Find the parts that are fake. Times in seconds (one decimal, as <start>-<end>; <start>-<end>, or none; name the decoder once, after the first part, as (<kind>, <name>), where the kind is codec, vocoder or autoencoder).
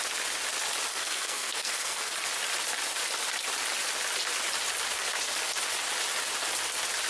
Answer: 0.9-2.1 (codec, SNAC)